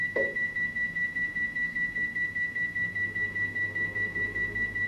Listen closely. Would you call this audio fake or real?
fake